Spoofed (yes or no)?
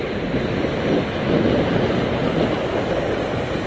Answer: no